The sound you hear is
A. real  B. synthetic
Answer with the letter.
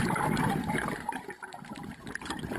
B